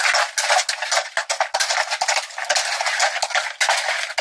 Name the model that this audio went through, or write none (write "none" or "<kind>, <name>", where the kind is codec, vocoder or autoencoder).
none